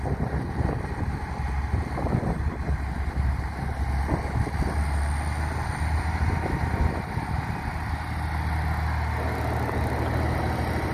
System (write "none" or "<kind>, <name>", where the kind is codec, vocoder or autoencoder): none